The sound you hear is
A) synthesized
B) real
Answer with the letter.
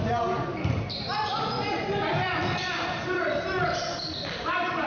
A